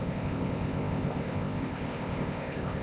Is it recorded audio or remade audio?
remade